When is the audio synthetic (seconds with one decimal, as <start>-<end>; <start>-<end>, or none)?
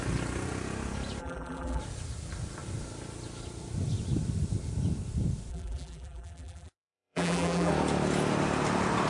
1.2-1.8; 5.5-7.7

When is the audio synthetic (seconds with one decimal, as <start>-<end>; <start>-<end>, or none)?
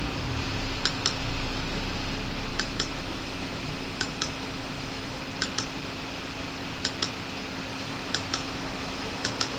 2.5-5.2; 7.7-9.6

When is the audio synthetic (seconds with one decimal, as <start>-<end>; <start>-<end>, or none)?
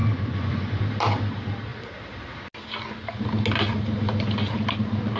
0.0-0.8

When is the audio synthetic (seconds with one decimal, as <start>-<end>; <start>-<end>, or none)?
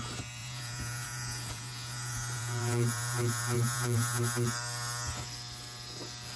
0.4-4.2